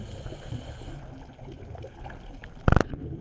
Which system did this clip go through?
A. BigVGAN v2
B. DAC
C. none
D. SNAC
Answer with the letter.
C